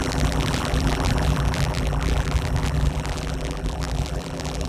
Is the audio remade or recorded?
remade